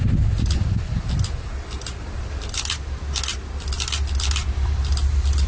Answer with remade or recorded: recorded